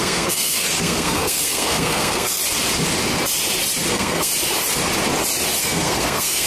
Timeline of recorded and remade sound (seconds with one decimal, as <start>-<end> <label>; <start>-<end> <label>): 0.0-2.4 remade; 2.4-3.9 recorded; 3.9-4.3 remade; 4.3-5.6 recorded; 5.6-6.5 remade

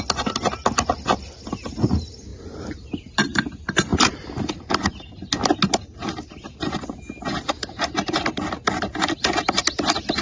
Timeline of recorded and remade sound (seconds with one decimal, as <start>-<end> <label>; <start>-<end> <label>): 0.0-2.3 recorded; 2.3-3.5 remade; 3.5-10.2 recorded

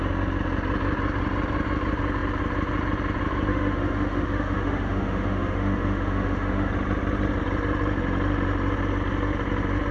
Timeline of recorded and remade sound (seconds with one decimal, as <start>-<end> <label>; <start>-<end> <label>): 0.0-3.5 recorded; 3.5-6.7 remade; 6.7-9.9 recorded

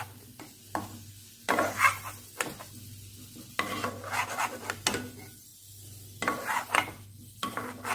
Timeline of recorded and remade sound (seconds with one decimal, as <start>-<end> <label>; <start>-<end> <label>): 0.0-5.5 recorded; 5.5-7.9 remade

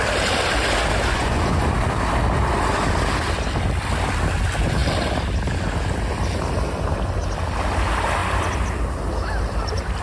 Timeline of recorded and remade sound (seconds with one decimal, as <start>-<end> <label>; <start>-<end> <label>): 0.0-1.1 recorded; 1.1-1.7 remade; 1.7-10.0 recorded

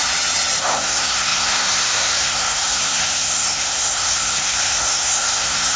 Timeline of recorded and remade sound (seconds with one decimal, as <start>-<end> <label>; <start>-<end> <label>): 0.0-0.6 recorded; 0.6-5.8 remade

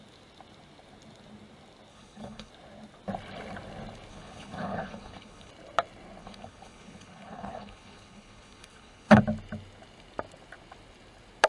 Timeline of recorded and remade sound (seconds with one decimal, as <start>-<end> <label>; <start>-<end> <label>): 0.0-1.9 recorded; 1.9-2.5 remade; 2.5-4.1 recorded; 4.1-5.5 remade; 5.5-6.2 recorded; 6.2-9.2 remade; 9.2-11.5 recorded

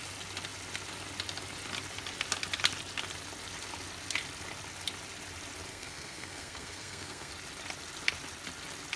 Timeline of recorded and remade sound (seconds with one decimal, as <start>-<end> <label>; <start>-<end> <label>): 0.0-5.7 recorded; 5.7-7.3 remade; 7.3-9.0 recorded